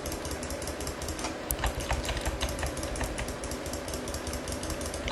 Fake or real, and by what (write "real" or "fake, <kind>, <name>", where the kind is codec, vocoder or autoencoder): real